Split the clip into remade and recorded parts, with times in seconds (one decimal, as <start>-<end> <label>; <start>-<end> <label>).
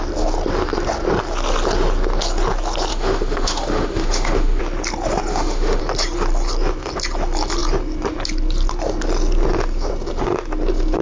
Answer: 0.0-2.9 recorded; 2.9-4.6 remade; 4.6-5.3 recorded; 5.3-5.8 remade; 5.8-11.0 recorded